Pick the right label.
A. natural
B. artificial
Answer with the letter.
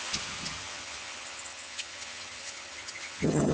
B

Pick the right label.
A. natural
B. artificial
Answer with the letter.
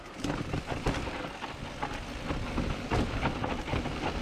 A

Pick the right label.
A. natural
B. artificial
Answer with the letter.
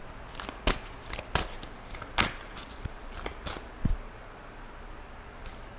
A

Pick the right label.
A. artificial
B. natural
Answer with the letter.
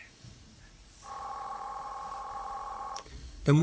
A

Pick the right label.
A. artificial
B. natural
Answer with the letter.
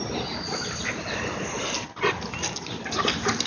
B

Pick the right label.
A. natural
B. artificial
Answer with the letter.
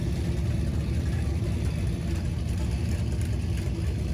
A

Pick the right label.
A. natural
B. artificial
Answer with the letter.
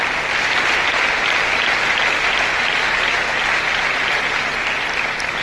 A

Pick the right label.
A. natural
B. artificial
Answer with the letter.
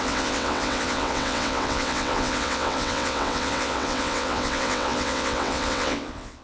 B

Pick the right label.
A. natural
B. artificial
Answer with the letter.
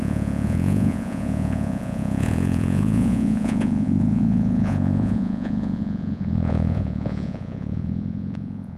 B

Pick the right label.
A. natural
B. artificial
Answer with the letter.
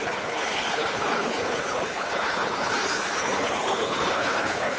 B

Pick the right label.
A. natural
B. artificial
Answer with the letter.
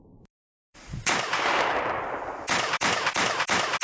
B